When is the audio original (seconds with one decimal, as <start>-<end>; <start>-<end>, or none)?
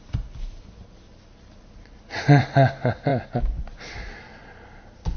0.0-5.2